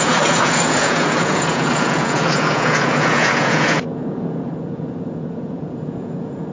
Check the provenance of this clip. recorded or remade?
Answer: remade